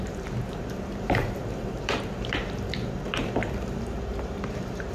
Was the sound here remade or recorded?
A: remade